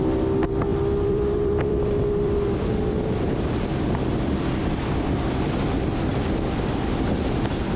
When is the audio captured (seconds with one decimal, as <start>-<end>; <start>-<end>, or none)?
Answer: 0.0-0.7; 5.4-7.8